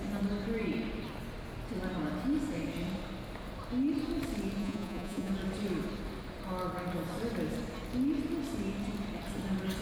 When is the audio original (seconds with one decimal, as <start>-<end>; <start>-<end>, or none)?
0.0-4.6; 5.3-9.8